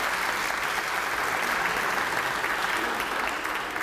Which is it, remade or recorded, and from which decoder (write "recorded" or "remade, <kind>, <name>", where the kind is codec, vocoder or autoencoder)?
recorded